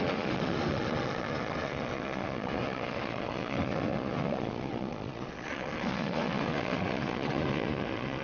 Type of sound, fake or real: fake